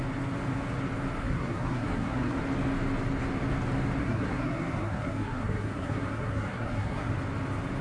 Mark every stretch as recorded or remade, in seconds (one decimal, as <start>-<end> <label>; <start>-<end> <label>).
0.0-1.2 recorded; 1.2-2.4 remade; 2.4-4.0 recorded; 4.0-7.1 remade; 7.1-7.8 recorded